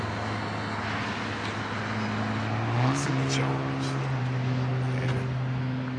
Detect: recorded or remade recorded